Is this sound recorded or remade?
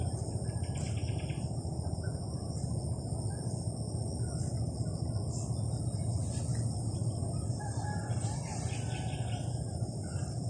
recorded